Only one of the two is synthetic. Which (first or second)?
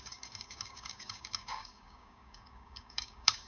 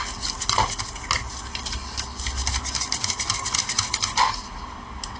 first